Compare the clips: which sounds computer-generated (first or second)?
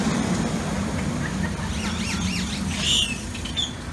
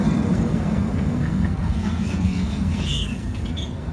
second